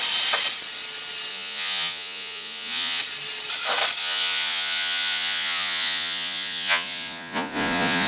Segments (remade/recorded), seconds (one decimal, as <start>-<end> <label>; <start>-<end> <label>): 0.0-1.3 recorded; 1.3-3.0 remade; 3.0-4.0 recorded; 4.0-8.1 remade